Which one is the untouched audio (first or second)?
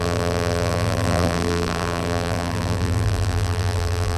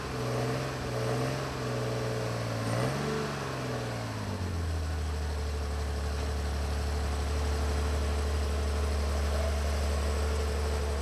second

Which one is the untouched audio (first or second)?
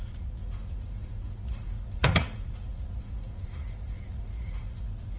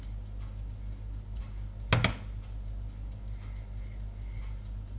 second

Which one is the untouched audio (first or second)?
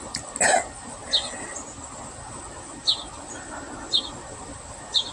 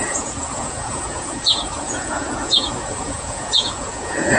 first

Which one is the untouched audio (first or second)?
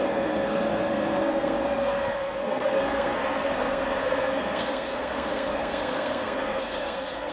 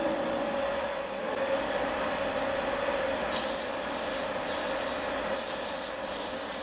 second